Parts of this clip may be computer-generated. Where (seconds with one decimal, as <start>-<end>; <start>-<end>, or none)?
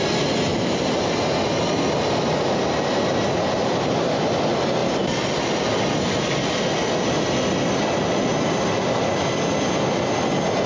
0.5-1.1